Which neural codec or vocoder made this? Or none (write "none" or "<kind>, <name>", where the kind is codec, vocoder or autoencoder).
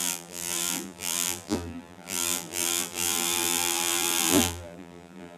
vocoder, BigVGAN v2